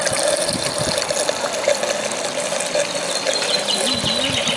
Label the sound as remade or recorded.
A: recorded